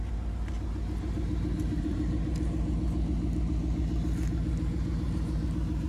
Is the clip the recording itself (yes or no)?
yes